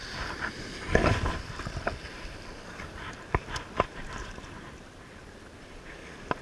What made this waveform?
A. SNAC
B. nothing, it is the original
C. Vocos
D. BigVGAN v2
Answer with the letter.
B